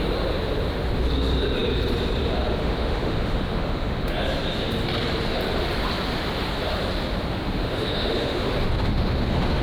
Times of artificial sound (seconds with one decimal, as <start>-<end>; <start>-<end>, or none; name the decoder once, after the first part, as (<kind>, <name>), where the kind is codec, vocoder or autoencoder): 2.6-4.1 (autoencoder, DAC-VAE); 7.6-8.5; 8.9-9.6